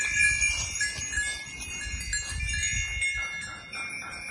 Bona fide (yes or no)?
yes